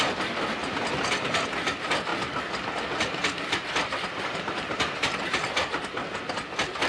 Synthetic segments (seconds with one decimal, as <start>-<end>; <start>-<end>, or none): none